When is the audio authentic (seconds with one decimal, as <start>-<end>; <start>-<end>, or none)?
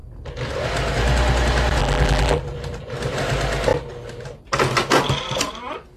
0.0-1.8; 2.4-6.0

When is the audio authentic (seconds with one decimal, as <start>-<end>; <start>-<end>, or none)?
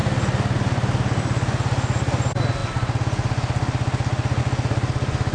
0.0-5.3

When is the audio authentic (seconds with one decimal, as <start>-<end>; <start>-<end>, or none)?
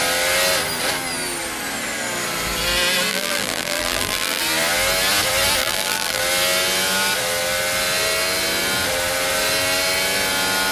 0.0-3.1; 4.4-5.6; 6.2-10.7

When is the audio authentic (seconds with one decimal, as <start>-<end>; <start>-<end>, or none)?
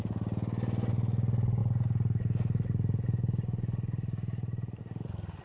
0.0-5.4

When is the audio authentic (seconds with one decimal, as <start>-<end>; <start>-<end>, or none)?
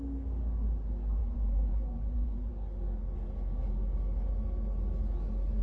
0.0-1.2; 2.5-5.6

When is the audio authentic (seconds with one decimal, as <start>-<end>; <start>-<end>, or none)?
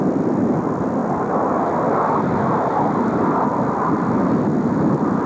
1.0-2.2; 3.5-4.6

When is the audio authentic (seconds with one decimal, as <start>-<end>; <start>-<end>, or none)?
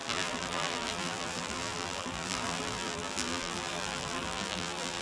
none